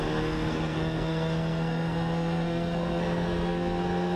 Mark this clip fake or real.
fake